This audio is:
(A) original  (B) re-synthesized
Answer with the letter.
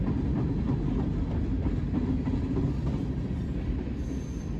A